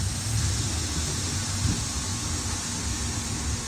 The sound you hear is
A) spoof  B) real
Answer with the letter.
B